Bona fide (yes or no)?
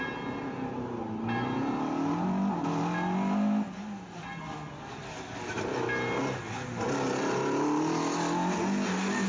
yes